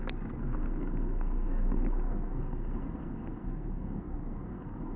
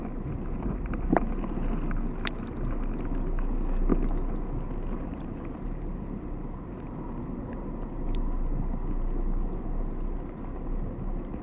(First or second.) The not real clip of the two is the first